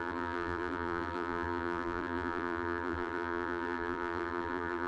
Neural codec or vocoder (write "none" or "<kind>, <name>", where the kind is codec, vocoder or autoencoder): vocoder, BigVGAN v2